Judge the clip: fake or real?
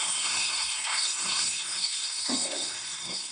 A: fake